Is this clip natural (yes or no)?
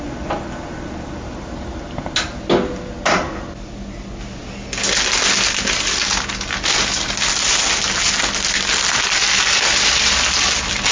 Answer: yes